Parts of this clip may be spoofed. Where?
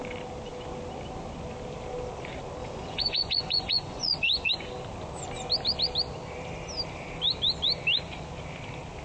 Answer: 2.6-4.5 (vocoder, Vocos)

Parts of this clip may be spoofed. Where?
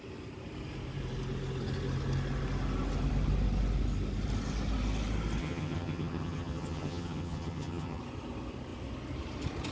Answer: 5.4-8.0 (vocoder, HiFi-GAN)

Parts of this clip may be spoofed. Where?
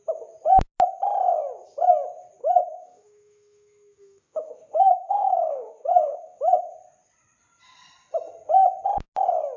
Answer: 2.4-6.7 (autoencoder, DAC-VAE)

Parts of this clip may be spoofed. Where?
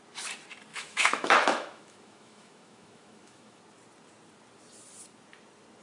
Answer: 0.7-3.6 (autoencoder, DAC-VAE)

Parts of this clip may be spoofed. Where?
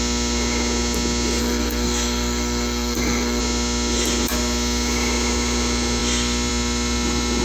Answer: 1.4-3.4 (codec, SNAC)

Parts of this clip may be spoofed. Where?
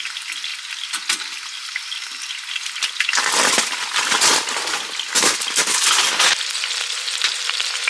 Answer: none